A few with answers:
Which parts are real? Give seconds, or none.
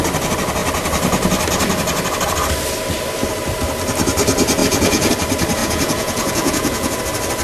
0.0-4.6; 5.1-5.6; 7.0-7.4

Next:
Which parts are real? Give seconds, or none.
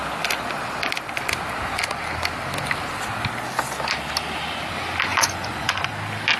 0.0-5.1; 5.9-6.4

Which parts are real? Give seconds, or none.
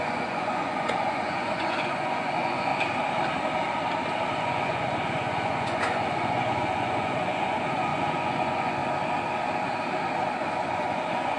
2.7-4.4; 8.8-10.5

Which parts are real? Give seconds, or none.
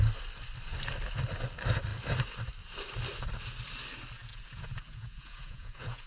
0.0-4.3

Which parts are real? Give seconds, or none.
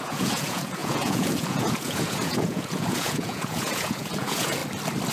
4.6-5.1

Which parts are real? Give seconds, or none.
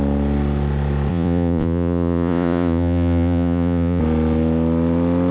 0.0-1.1; 4.0-5.3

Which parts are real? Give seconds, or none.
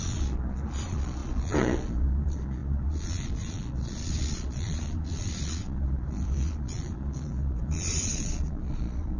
none